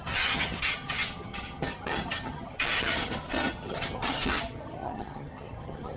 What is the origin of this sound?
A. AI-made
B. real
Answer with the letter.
A